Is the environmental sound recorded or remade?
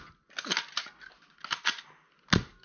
recorded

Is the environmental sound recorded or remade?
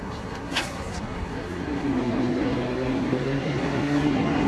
remade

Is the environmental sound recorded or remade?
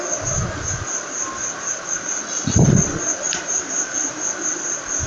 recorded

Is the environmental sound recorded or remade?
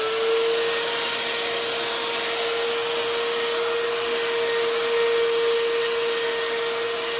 recorded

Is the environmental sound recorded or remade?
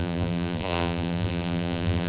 remade